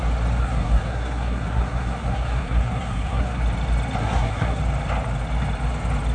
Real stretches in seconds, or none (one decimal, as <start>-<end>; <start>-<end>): 0.0-0.4; 3.4-4.0; 4.6-6.1